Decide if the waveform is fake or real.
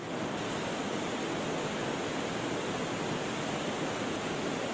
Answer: real